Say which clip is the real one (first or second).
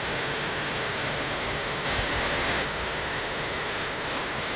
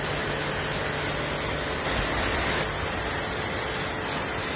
second